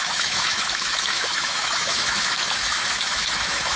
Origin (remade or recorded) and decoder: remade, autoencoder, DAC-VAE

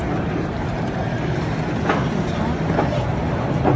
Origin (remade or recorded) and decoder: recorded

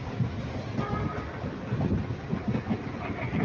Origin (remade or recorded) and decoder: recorded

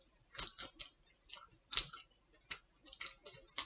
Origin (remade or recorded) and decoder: recorded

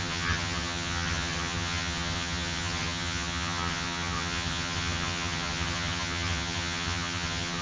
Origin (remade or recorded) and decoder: remade, vocoder, HiFi-GAN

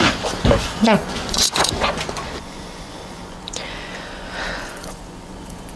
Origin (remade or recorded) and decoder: remade, vocoder, Vocos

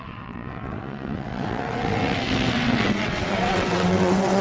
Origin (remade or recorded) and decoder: remade, vocoder, WaveNeXt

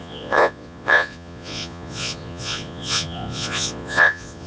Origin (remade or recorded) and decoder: remade, vocoder, Vocos